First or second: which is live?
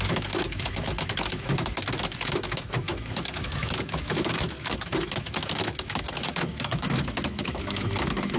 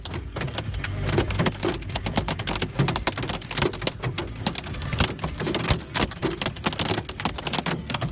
second